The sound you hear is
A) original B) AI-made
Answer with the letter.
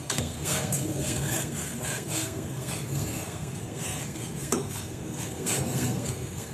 B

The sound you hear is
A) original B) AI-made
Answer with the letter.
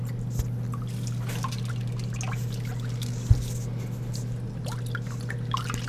A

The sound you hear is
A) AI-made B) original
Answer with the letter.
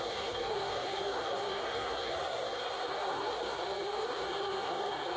A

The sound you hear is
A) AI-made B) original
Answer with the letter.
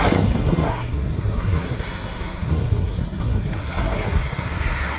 A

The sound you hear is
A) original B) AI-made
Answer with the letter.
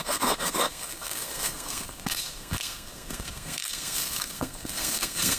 B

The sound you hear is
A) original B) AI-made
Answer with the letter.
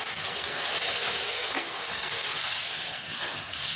B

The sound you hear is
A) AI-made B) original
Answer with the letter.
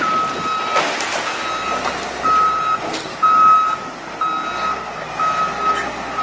B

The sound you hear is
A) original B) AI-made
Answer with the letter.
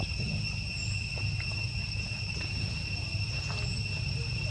A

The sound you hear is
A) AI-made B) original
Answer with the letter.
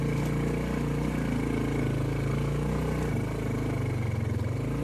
B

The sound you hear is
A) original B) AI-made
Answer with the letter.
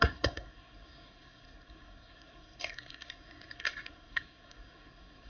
B